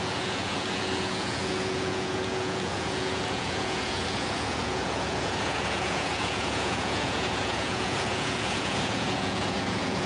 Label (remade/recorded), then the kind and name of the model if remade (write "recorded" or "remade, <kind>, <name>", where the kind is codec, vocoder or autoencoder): remade, vocoder, Vocos